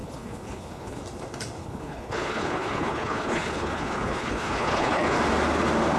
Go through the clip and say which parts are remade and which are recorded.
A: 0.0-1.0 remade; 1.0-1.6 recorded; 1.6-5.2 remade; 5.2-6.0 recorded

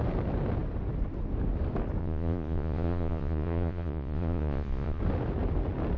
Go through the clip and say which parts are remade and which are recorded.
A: 0.0-2.0 recorded; 2.0-5.0 remade; 5.0-6.0 recorded

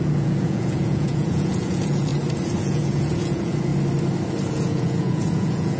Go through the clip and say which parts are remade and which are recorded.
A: 0.0-2.1 remade; 2.1-2.6 recorded; 2.6-3.7 remade; 3.7-4.5 recorded; 4.5-5.8 remade

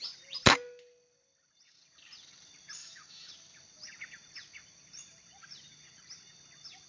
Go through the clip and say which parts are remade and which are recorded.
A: 0.0-2.8 recorded; 2.8-3.3 remade; 3.3-6.9 recorded

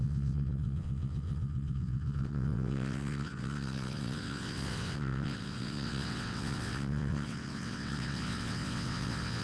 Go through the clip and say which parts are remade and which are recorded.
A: 0.0-9.4 remade

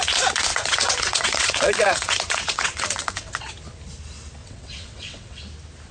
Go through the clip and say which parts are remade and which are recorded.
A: 0.0-0.5 recorded; 0.5-3.5 remade; 3.5-4.4 recorded; 4.4-5.4 remade; 5.4-5.9 recorded

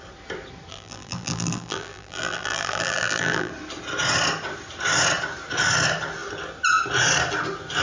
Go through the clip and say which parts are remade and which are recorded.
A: 0.0-0.7 recorded; 0.7-3.5 remade; 3.5-7.8 recorded